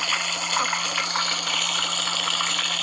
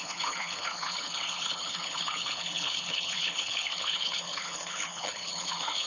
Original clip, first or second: first